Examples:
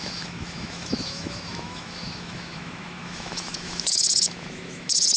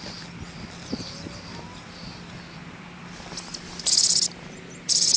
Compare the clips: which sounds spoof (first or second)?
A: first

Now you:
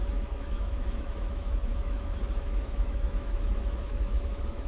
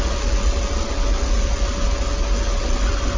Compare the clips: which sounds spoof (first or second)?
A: first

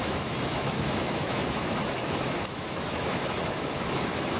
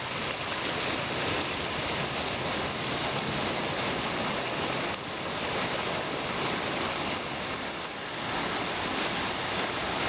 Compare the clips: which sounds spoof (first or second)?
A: first